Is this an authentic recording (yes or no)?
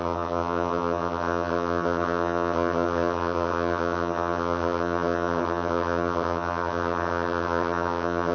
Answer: no